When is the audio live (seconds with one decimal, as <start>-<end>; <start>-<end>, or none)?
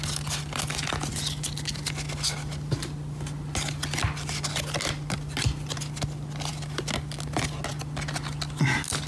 0.0-9.1